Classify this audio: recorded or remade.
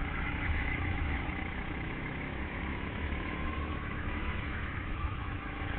remade